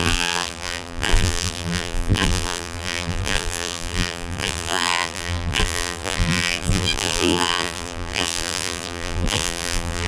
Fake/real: fake